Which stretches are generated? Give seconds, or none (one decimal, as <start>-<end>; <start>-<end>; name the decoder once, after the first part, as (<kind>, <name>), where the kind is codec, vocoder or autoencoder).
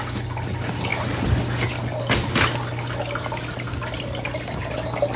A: none